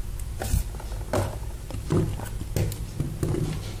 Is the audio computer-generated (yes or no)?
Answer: no